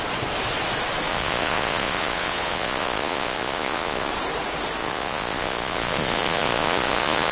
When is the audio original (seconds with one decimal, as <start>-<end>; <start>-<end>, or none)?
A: 0.0-1.1; 4.1-4.8